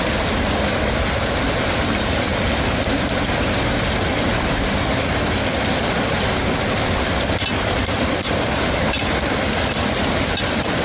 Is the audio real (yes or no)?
yes